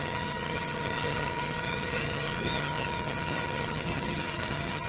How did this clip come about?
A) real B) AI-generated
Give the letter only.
B